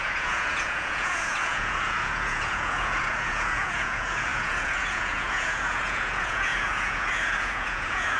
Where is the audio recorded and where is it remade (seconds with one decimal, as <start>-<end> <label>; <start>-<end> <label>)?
0.0-8.2 remade